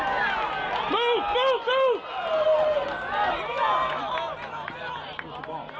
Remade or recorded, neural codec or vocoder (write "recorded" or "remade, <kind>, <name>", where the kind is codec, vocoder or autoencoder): recorded